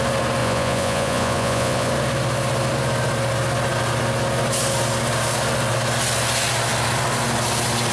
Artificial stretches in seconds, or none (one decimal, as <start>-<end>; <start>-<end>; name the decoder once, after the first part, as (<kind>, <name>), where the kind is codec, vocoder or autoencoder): 0.4-1.9 (vocoder, Vocos)